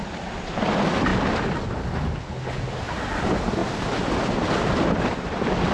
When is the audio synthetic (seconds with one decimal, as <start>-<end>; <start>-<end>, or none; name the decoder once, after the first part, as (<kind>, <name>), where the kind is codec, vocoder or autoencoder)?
0.0-1.1 (vocoder, BigVGAN v2); 3.2-3.6; 4.2-5.7